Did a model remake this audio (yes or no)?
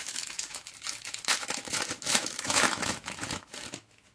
yes